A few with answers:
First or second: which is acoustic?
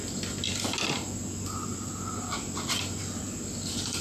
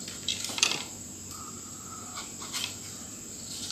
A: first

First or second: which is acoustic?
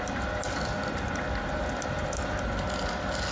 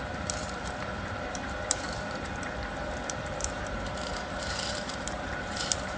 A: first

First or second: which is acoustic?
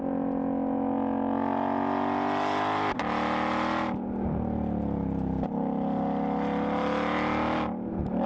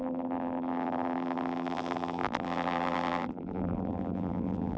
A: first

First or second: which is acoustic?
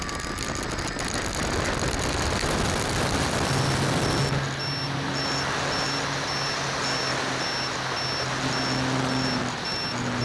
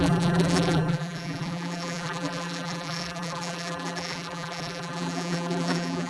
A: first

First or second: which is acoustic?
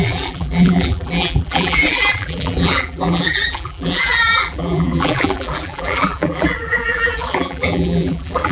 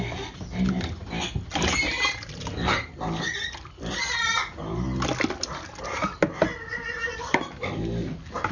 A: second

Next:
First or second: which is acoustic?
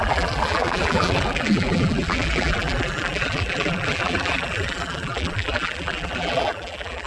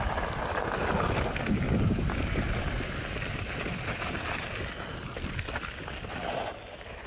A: second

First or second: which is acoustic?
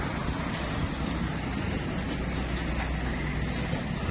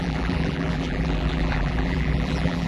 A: first